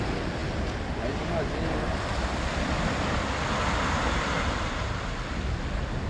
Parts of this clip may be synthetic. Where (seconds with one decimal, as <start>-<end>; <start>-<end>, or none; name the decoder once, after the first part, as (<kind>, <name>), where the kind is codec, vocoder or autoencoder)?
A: none